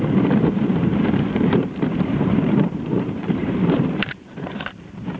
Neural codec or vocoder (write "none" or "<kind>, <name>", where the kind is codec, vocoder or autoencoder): vocoder, BigVGAN v2